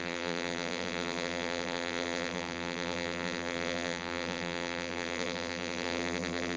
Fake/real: fake